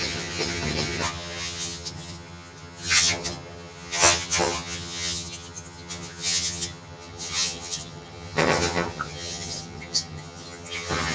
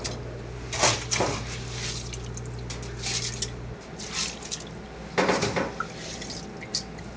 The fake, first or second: first